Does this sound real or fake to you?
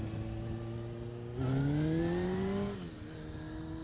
real